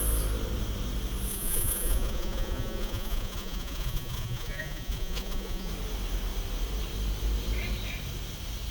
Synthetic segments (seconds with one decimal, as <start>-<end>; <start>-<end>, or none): 1.3-5.7